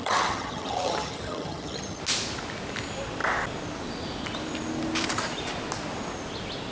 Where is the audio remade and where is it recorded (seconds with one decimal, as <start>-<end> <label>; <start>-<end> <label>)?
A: 0.0-2.0 remade; 2.0-6.7 recorded